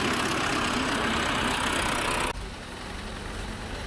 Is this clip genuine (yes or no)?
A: yes